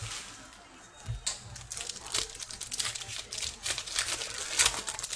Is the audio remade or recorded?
recorded